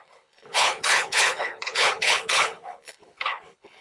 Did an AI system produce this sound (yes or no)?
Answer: yes